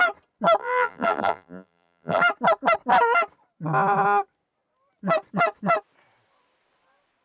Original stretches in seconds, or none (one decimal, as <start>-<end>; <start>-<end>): 0.0-0.6; 2.2-7.2